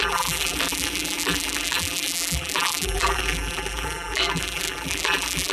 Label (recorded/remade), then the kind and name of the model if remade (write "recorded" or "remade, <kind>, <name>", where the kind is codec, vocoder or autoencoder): remade, vocoder, BigVGAN v2